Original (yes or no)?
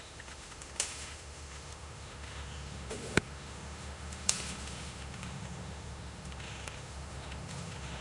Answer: no